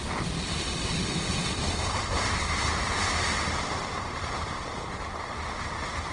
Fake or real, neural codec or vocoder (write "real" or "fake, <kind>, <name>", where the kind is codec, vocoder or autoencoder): real